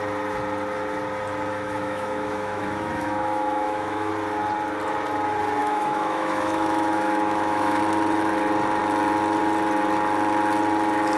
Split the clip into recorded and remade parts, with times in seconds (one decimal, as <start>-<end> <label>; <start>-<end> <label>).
0.0-1.5 recorded; 1.5-4.1 remade; 4.1-5.6 recorded; 5.6-7.8 remade; 7.8-11.2 recorded